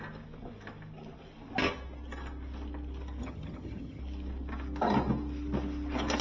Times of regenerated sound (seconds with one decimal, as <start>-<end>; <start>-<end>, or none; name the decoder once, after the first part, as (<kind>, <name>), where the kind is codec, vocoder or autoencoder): 3.2-4.0 (vocoder, HiFi-GAN)